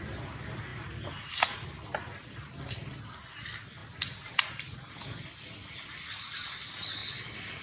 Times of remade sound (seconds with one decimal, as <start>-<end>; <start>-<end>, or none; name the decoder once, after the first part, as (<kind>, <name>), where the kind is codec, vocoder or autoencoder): none